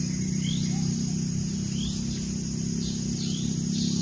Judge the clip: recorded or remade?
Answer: recorded